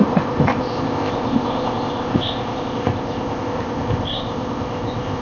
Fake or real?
fake